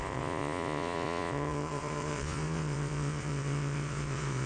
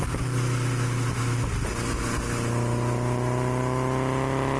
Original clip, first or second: second